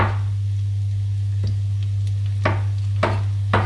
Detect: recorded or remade recorded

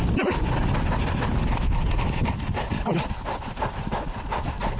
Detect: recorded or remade recorded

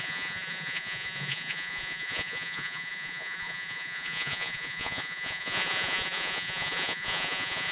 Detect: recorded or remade remade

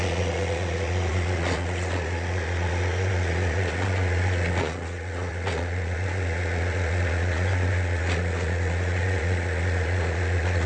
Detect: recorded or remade remade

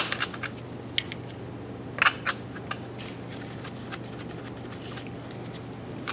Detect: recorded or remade recorded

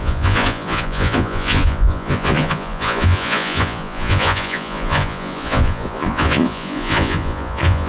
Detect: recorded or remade remade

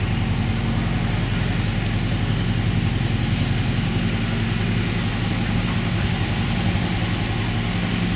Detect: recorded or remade recorded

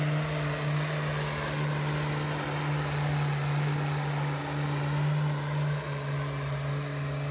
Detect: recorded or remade recorded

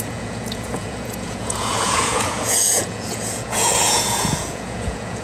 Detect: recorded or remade remade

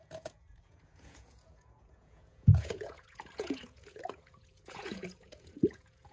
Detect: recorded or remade remade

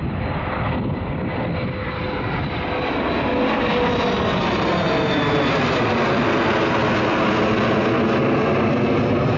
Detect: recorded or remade recorded